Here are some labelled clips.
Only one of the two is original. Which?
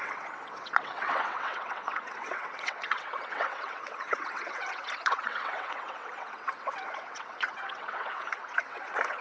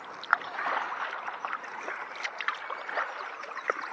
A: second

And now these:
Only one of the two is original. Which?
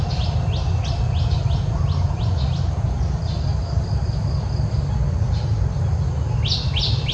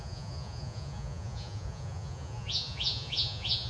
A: first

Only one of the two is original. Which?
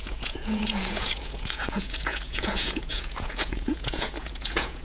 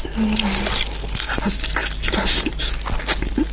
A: second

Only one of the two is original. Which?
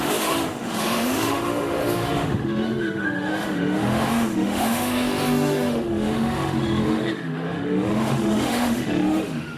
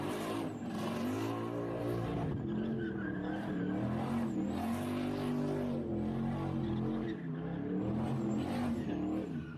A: second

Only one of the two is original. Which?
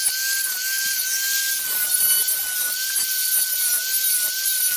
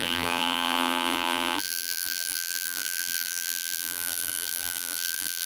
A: first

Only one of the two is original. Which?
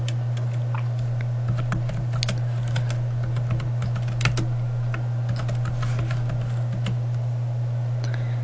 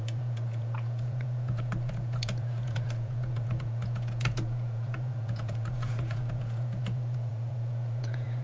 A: first